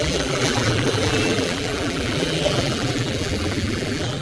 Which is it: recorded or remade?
remade